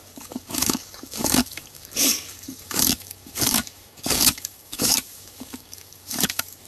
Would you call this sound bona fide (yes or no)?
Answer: no